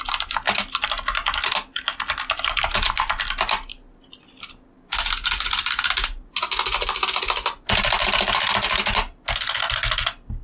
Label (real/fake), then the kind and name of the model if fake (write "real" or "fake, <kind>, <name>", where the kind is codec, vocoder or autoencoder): real